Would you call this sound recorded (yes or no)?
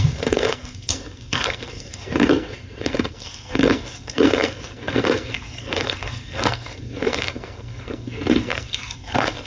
no